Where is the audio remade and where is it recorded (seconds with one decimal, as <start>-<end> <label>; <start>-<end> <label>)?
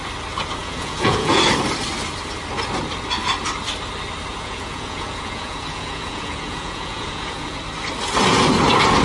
0.0-0.6 recorded; 0.6-1.4 remade; 1.4-4.3 recorded; 4.3-7.6 remade; 7.6-9.0 recorded